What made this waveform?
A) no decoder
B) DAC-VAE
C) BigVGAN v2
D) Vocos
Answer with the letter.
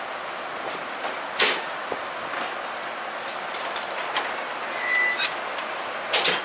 A